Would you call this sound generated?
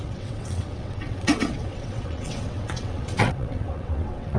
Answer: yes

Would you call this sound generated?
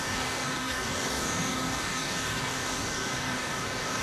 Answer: yes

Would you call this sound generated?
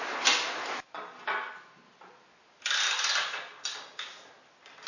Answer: no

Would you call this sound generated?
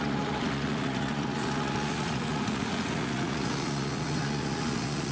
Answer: yes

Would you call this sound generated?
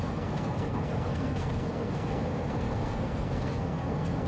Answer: yes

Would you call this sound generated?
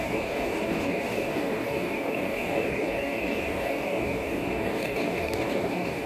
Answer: yes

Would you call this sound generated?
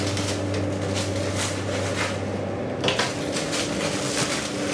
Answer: no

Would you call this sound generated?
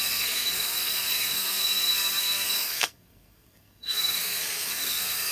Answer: yes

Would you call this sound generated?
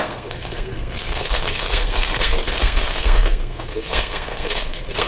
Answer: yes